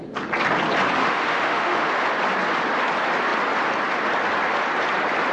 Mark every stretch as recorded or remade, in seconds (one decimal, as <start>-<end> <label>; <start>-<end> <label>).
0.0-1.0 recorded; 1.0-1.9 remade; 1.9-5.3 recorded